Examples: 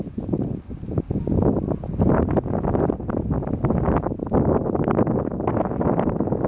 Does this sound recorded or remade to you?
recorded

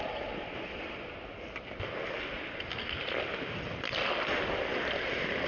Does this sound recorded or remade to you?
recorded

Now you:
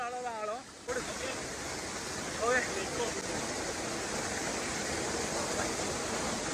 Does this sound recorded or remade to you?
recorded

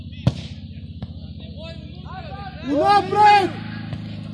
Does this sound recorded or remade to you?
recorded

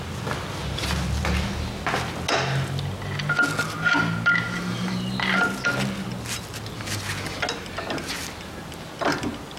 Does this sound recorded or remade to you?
recorded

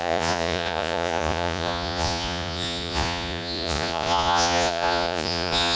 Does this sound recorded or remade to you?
remade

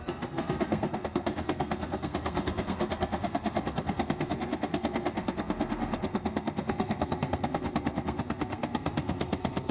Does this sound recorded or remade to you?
remade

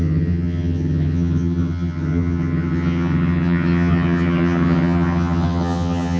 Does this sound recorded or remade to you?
remade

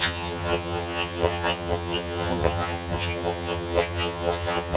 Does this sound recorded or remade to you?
remade